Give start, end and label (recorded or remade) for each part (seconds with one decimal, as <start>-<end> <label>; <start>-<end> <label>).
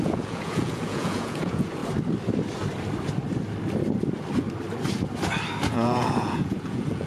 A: 0.0-1.8 remade; 1.8-5.7 recorded; 5.7-7.1 remade